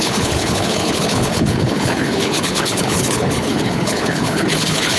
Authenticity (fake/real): fake